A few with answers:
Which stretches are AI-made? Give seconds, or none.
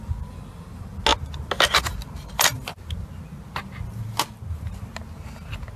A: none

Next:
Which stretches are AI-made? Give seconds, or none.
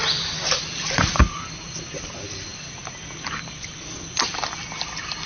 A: none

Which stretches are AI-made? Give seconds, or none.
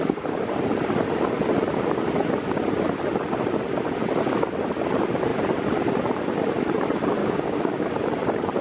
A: 7.2-7.9 (codec, DAC)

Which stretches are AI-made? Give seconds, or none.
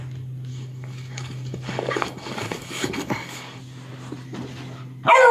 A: 0.5-3.6 (codec, DAC)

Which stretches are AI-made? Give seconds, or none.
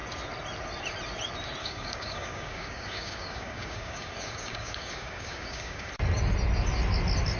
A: 1.6-5.9 (codec, DAC)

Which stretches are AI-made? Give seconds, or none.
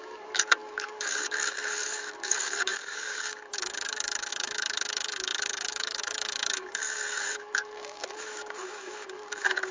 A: 0.0-9.7 (codec, DAC)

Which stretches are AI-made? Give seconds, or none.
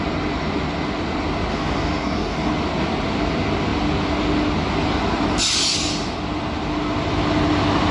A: 1.5-2.5 (codec, DAC)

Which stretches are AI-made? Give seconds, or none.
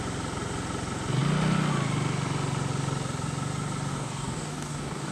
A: 3.9-5.1 (codec, DAC)